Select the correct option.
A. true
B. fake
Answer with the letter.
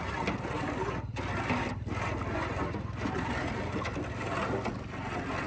A